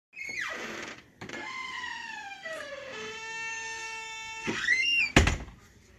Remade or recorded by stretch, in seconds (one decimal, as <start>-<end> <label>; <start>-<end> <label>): 0.0-1.3 recorded; 1.3-2.7 remade; 2.7-3.5 recorded; 3.5-5.0 remade; 5.0-6.0 recorded